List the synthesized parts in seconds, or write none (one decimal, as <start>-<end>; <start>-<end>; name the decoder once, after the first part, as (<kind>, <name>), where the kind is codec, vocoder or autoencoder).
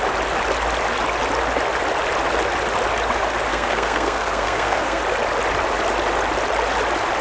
3.5-5.0 (codec, SNAC)